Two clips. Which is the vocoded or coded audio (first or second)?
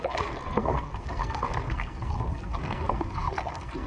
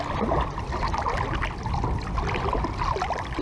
first